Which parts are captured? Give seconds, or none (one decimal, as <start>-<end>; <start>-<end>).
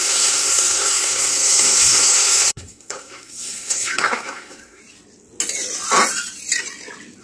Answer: 4.8-7.2